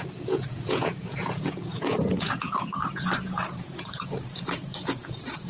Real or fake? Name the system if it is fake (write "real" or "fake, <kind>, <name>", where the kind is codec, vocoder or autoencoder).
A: fake, vocoder, Vocos